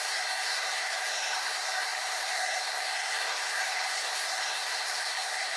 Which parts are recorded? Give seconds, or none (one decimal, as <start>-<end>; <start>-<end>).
none